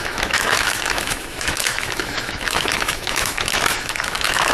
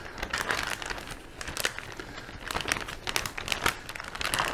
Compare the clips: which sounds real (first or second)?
second